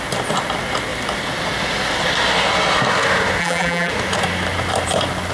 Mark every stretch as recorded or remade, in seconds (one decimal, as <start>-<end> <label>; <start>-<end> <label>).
0.0-3.4 recorded; 3.4-3.9 remade; 3.9-5.3 recorded